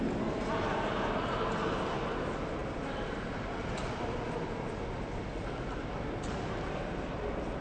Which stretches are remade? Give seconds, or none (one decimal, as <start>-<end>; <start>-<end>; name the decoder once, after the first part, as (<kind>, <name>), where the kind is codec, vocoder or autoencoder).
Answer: 2.6-4.3 (vocoder, BigVGAN v2)